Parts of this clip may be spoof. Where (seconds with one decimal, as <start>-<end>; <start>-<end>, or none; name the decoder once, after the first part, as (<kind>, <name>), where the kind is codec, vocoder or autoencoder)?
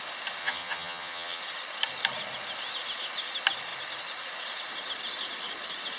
0.4-1.4 (vocoder, HiFi-GAN)